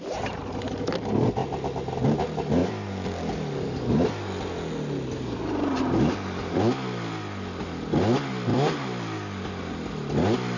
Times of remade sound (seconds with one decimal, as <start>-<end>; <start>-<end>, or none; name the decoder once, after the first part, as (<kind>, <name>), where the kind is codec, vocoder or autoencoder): none